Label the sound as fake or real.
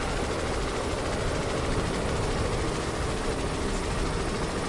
real